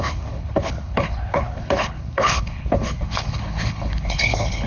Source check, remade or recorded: remade